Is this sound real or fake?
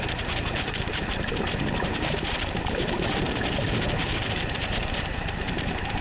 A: fake